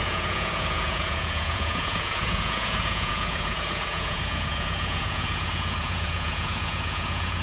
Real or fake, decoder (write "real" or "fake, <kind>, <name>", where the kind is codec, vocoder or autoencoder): fake, vocoder, Vocos